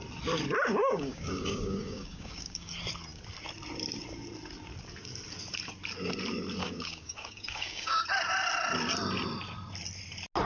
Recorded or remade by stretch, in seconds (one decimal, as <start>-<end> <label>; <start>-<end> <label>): 0.0-0.8 recorded; 0.8-2.7 remade; 2.7-6.6 recorded; 6.6-8.0 remade; 8.0-10.4 recorded